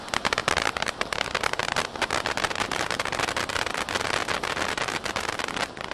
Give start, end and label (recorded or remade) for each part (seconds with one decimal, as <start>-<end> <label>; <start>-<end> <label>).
0.0-0.4 recorded; 0.4-3.2 remade; 3.2-5.9 recorded